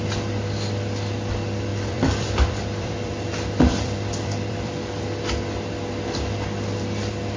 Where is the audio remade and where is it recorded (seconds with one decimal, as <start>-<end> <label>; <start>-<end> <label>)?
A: 0.0-1.7 recorded; 1.7-5.2 remade; 5.2-7.4 recorded